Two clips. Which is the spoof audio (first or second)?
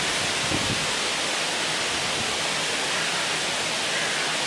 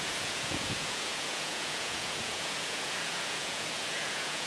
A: second